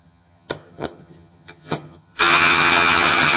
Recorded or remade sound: remade